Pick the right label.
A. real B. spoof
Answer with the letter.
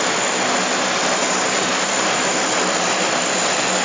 A